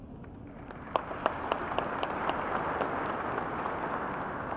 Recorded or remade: recorded